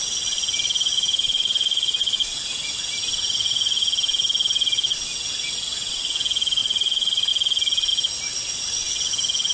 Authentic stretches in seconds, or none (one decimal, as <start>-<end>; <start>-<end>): 0.0-0.9; 2.4-6.6; 7.3-9.5

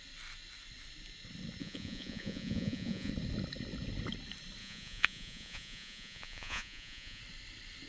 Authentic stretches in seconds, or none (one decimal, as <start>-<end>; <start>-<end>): 0.0-1.6; 3.1-4.6; 7.2-7.9

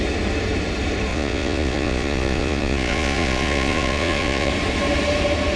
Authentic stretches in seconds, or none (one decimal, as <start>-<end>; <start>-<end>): 0.0-1.1; 4.5-5.6

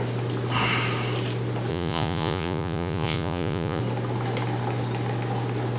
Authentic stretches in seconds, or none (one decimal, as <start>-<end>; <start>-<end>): 0.0-1.7; 3.8-5.8